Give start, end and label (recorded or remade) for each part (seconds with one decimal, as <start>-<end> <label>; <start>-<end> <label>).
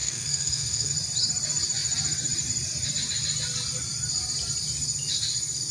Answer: 0.0-0.9 remade; 0.9-5.7 recorded